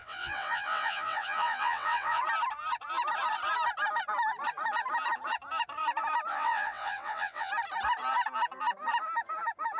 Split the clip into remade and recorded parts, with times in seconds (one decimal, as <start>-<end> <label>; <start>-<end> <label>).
0.0-2.2 remade; 2.2-6.3 recorded; 6.3-7.5 remade; 7.5-9.8 recorded